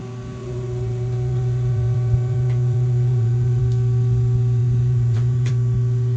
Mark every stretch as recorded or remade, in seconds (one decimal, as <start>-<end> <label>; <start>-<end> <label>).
0.0-0.4 recorded; 0.4-3.6 remade; 3.6-4.6 recorded; 4.6-5.5 remade; 5.5-6.2 recorded